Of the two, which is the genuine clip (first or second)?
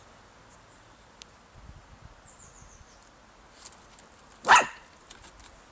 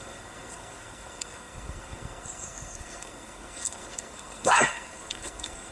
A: first